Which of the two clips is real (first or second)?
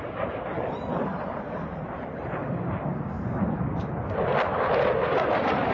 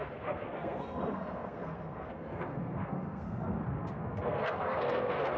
first